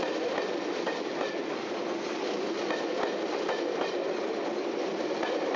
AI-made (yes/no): no